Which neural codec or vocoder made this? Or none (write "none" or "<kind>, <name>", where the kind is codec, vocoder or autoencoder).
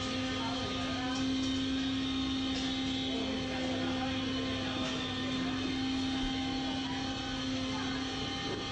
none